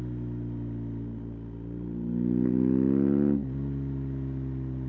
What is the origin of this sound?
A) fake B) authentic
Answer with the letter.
B